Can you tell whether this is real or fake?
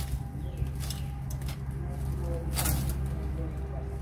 real